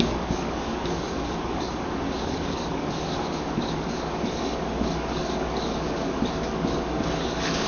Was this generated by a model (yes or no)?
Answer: yes